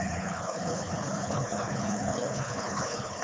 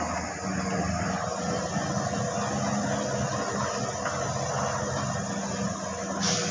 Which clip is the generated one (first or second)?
first